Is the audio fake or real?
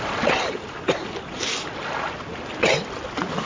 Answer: real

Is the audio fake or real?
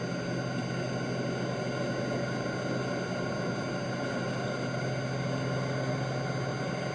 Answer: real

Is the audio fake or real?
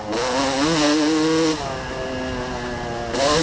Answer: real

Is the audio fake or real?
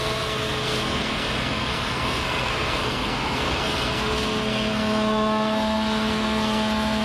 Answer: fake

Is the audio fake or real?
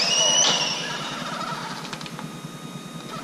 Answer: real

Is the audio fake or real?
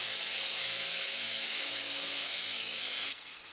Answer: fake